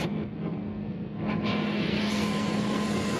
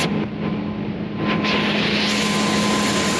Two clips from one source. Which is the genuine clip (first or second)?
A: second